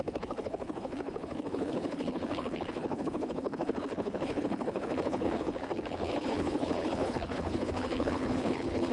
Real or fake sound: fake